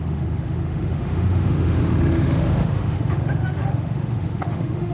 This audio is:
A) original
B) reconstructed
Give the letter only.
B